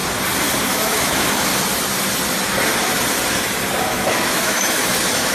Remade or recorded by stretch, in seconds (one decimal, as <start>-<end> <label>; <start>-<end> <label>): 0.0-0.6 recorded; 0.6-1.5 remade; 1.5-3.8 recorded; 3.8-5.3 remade